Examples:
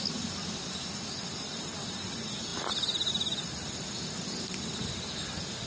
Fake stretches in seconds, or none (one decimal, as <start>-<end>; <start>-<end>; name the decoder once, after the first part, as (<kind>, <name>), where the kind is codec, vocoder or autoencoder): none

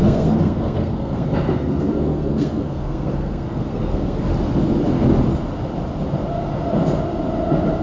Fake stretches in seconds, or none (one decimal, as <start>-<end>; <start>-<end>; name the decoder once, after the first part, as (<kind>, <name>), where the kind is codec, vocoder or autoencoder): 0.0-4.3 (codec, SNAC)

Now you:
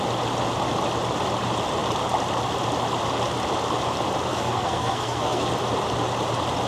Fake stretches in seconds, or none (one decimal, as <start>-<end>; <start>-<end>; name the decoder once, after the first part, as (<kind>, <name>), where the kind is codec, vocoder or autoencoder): 4.3-5.5 (codec, SNAC)

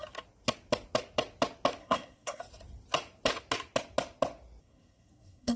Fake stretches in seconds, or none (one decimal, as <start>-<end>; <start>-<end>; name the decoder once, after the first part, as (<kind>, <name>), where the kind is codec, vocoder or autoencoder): 1.8-2.4 (codec, SNAC); 4.6-5.6

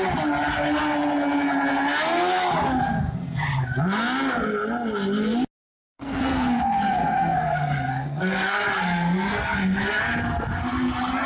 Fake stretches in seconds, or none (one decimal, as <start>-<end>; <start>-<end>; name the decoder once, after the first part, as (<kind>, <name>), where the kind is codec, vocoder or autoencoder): 5.7-10.0 (codec, SNAC)